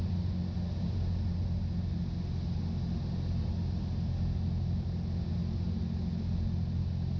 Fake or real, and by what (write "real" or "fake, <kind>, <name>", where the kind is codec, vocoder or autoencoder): real